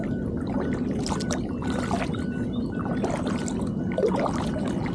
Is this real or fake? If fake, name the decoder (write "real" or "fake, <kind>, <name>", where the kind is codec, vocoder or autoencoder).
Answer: real